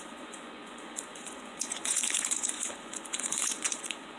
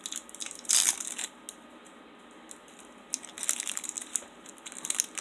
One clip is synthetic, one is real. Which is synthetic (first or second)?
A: first